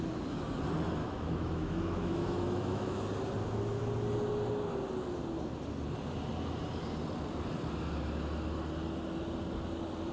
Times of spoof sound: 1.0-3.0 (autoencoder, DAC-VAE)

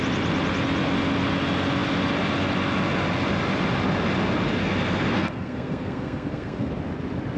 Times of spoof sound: 4.6-6.7 (codec, SNAC)

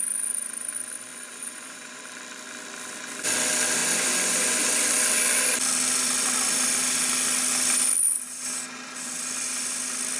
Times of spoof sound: 1.1-2.0 (vocoder, Vocos); 3.8-4.6

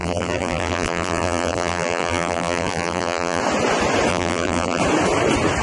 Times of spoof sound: 0.0-3.4 (vocoder, BigVGAN v2); 4.1-4.8

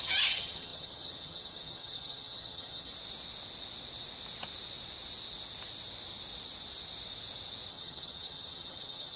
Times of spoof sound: 0.0-2.9 (vocoder, HiFi-GAN); 7.7-9.2

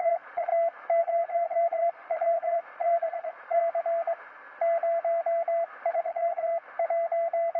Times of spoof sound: 0.0-0.5 (vocoder, Vocos); 1.0-3.6; 5.9-6.5

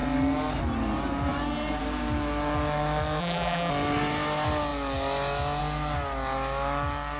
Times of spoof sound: 3.2-3.7 (vocoder, BigVGAN v2)

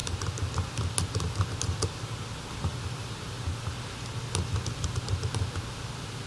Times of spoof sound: 2.7-3.7 (vocoder, BigVGAN v2)